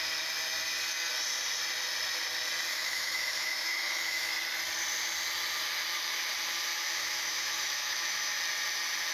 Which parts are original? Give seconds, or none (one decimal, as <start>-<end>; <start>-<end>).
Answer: 0.0-2.7; 4.3-6.7; 8.4-9.1